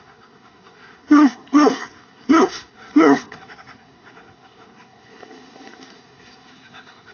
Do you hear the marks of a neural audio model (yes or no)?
yes